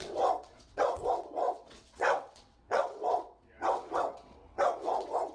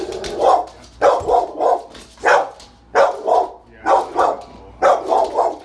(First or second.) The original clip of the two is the second